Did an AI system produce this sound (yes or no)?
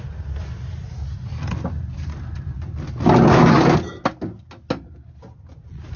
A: no